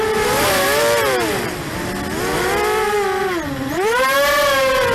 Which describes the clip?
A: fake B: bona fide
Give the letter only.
B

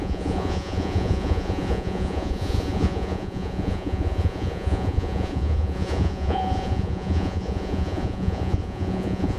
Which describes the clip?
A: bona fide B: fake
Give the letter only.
B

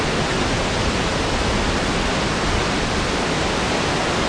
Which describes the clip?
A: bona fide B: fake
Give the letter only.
A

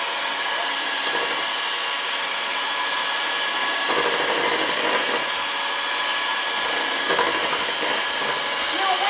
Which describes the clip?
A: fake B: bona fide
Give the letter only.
B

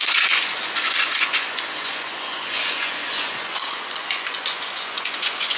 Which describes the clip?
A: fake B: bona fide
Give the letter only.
A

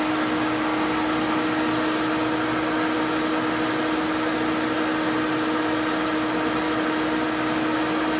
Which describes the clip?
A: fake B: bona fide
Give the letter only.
B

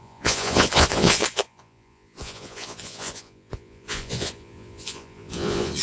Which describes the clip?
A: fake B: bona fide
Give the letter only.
A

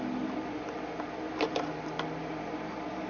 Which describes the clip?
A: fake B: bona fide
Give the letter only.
B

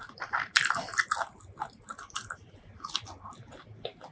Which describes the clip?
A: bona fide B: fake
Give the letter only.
A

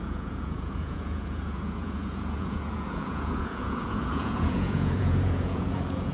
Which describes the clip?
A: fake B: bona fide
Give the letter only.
A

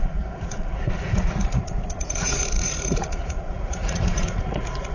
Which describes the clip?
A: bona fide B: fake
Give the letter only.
B